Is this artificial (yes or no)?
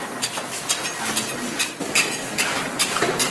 no